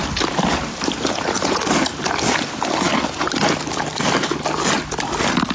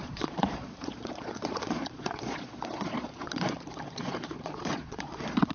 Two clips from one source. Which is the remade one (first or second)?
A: second